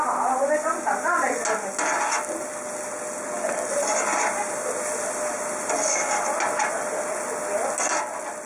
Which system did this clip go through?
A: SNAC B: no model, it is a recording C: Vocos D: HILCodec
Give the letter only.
B